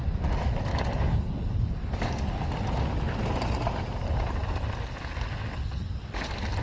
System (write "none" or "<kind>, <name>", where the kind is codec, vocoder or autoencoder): none